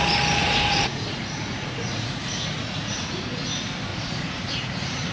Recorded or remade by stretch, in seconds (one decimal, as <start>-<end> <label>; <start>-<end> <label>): 0.0-0.4 recorded; 0.4-3.5 remade; 3.5-3.9 recorded; 3.9-5.1 remade